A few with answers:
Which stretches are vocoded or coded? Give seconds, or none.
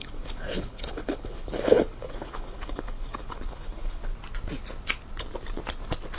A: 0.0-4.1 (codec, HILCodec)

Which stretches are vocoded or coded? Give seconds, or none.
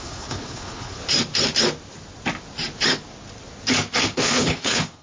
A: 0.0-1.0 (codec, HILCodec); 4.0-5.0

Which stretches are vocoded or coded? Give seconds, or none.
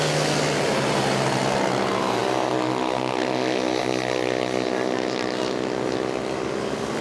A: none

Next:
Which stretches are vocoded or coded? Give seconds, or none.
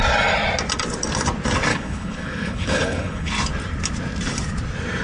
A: 1.7-3.3 (codec, HILCodec)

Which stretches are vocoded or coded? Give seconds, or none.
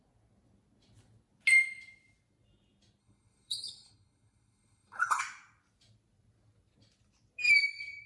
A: 3.0-5.2 (codec, HILCodec)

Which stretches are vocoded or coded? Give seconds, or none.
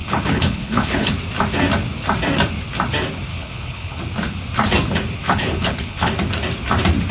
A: 0.0-1.1 (codec, HILCodec); 3.3-4.0; 5.2-6.1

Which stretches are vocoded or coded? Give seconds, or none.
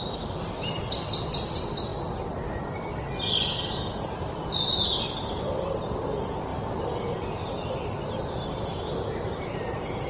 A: none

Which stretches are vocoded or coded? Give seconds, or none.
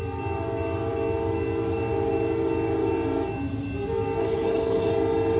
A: 4.2-4.9 (codec, HILCodec)